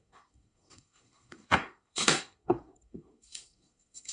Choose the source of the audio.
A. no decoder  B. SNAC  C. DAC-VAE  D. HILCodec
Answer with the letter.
B